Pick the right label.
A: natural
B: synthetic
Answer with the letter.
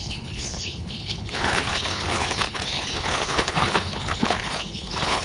B